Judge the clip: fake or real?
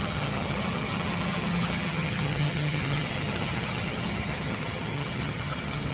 fake